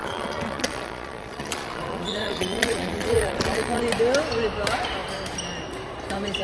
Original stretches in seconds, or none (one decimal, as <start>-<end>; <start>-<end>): 3.8-6.4